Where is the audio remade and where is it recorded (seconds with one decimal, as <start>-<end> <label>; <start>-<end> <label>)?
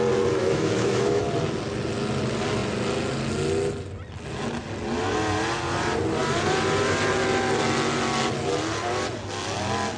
0.0-0.4 recorded; 0.4-1.2 remade; 1.2-10.0 recorded